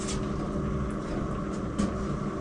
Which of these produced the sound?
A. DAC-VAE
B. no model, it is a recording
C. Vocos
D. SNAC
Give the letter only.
B